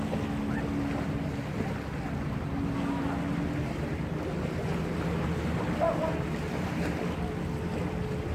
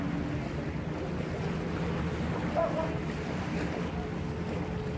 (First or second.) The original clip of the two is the second